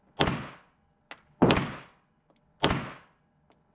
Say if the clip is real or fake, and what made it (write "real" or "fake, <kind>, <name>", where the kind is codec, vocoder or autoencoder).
real